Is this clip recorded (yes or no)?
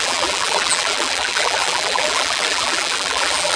no